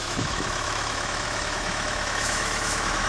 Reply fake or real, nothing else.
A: fake